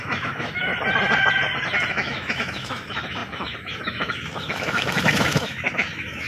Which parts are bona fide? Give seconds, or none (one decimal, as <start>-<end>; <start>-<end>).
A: 0.7-1.9